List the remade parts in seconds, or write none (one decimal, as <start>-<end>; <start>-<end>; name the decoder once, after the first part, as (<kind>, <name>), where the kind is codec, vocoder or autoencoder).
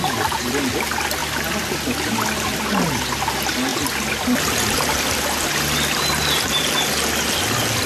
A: none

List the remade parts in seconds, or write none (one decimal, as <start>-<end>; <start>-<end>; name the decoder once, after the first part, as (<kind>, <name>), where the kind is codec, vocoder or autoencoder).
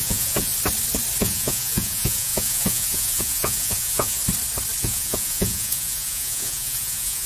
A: 0.0-0.5 (vocoder, Vocos); 1.2-4.2; 4.8-7.3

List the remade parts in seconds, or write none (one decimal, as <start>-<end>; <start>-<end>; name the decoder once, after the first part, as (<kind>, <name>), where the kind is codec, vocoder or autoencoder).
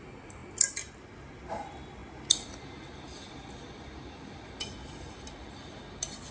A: none